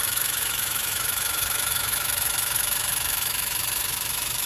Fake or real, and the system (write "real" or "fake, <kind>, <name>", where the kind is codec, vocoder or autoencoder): fake, autoencoder, DAC-VAE